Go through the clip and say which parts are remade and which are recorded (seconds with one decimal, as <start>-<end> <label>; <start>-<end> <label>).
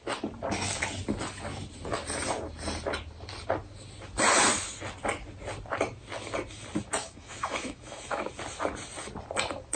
0.0-7.0 recorded; 7.0-8.3 remade; 8.3-9.8 recorded